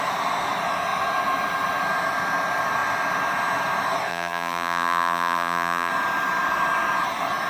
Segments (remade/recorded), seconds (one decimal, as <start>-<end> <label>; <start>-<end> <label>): 0.0-4.1 recorded; 4.1-5.9 remade; 5.9-7.5 recorded